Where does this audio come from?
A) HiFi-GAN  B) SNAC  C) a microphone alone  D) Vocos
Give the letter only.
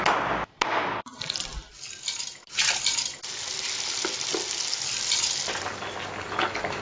C